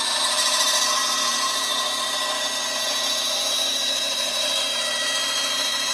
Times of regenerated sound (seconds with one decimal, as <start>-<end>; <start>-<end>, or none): none